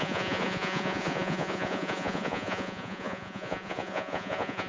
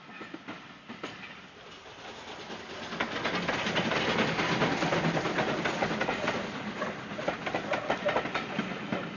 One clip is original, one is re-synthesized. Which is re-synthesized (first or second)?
first